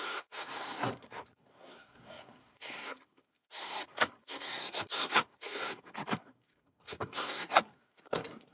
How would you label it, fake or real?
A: fake